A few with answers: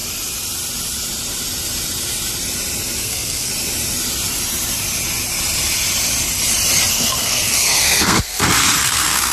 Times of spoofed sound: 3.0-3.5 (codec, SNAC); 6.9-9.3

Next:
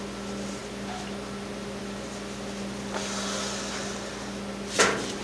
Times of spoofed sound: none

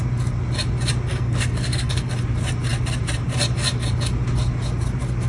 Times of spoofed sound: 1.1-2.1 (codec, SNAC)

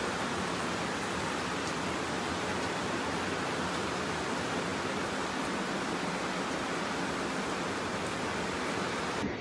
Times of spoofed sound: none

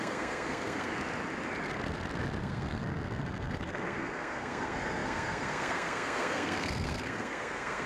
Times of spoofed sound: 0.0-0.9 (codec, SNAC); 2.4-7.9

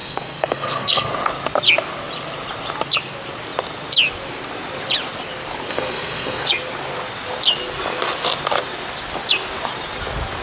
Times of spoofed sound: 0.0-1.1 (codec, SNAC); 5.7-6.5

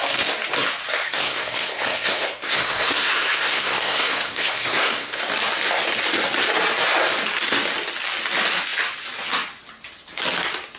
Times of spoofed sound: 1.0-5.2 (codec, SNAC)